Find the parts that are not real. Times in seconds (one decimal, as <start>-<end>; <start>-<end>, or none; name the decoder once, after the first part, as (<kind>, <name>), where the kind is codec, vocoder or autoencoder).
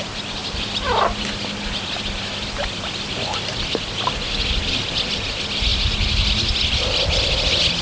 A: none